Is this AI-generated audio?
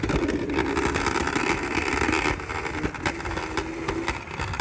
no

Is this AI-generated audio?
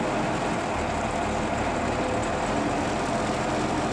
no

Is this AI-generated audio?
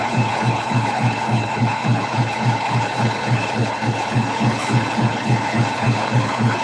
yes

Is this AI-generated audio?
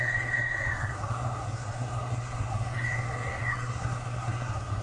yes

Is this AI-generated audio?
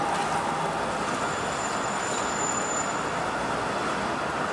no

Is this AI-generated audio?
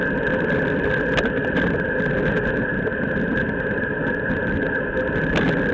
no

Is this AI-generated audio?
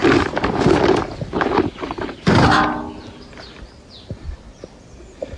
yes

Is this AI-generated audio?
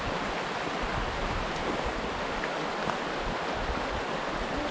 no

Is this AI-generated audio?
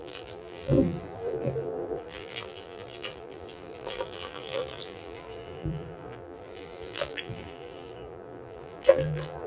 yes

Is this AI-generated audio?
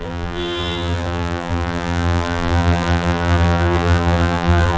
yes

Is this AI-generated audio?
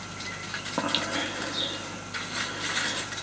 no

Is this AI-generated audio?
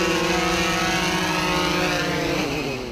no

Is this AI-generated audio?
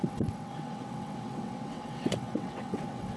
yes